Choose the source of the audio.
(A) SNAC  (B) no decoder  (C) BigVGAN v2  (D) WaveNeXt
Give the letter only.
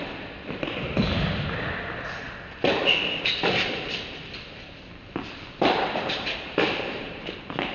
C